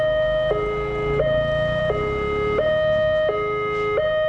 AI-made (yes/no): no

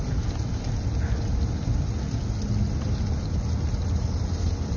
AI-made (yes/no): no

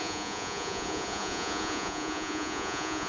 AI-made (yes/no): yes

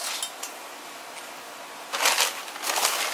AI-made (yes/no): no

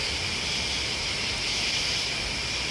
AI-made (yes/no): no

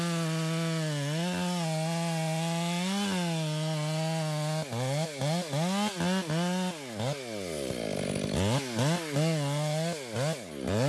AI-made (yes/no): no